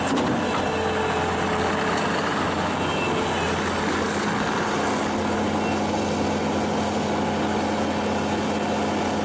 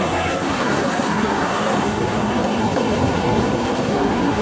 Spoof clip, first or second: second